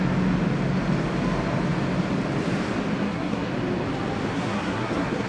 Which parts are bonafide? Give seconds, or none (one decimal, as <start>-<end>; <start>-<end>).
0.0-3.0; 3.5-4.3